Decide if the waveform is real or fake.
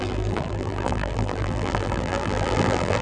fake